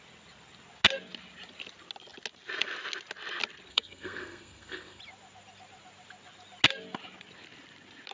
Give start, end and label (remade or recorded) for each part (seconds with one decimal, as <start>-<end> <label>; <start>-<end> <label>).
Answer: 0.0-3.7 recorded; 3.7-5.0 remade; 5.0-8.1 recorded